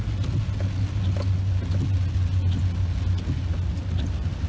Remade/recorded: recorded